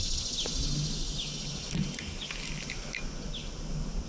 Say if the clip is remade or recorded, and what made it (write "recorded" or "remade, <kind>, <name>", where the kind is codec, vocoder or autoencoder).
recorded